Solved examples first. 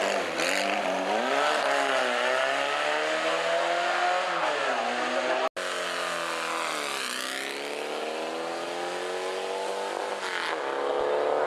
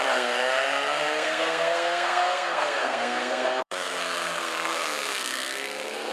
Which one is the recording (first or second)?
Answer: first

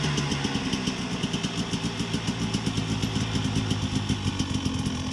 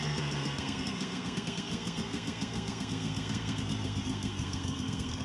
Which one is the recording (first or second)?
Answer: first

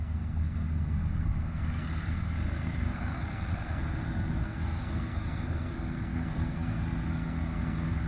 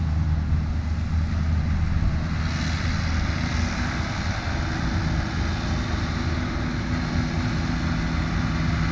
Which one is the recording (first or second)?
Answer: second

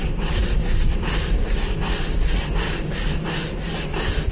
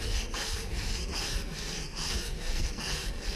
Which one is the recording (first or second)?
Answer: first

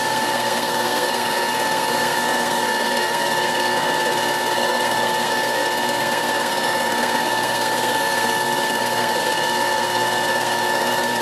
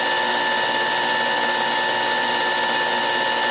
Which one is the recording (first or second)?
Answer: second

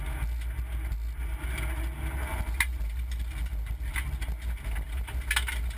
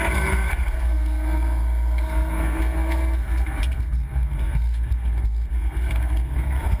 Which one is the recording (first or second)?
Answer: first